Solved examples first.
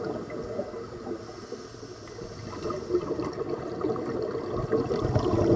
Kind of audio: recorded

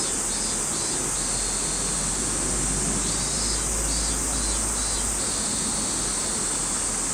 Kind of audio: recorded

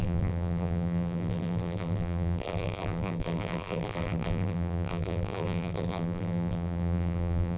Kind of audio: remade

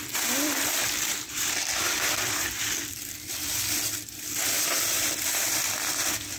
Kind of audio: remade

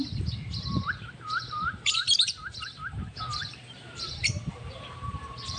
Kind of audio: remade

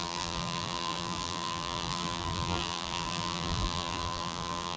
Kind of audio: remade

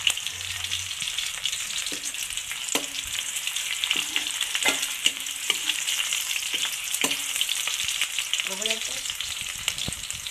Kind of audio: remade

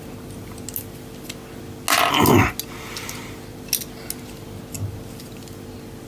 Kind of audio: recorded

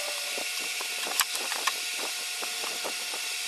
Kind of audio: remade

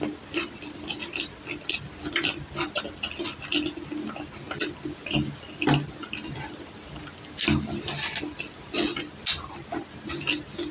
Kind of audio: recorded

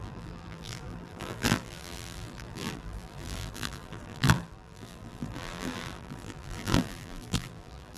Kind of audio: remade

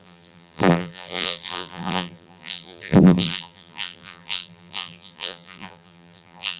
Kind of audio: remade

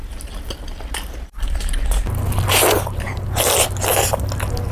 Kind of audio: recorded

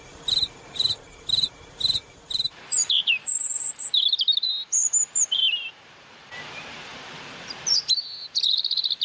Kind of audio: remade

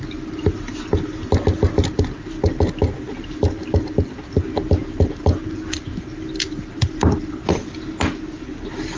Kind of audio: recorded